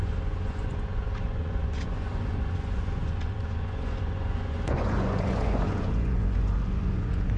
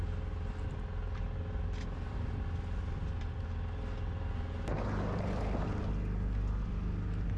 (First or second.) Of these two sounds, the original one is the second